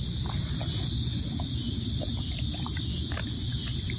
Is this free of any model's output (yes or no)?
yes